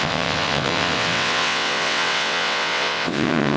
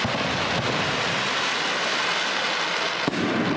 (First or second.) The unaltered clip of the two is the second